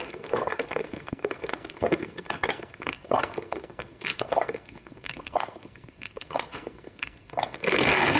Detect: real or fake fake